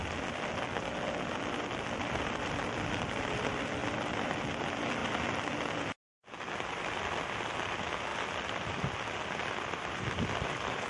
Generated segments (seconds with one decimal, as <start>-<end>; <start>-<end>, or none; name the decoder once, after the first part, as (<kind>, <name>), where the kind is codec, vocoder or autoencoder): 3.8-4.4 (vocoder, BigVGAN v2); 8.1-10.1